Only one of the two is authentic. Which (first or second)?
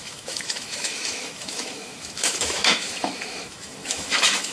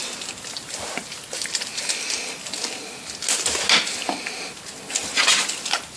second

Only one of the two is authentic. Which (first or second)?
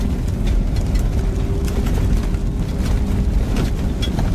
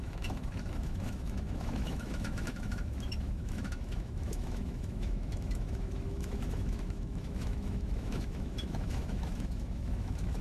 first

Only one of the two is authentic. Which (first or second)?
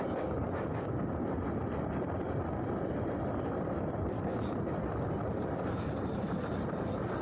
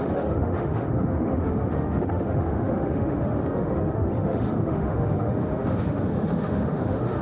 first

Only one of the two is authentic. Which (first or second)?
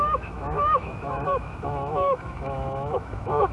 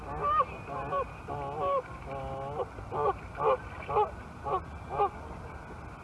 second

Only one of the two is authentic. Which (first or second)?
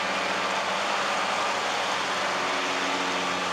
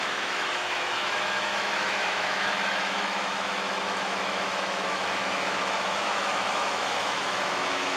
first